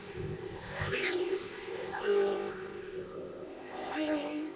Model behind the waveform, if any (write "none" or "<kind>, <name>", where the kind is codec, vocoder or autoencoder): codec, ZipCodec